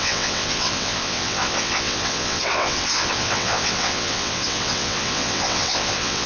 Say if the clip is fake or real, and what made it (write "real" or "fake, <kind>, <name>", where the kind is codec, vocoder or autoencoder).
fake, vocoder, WaveNeXt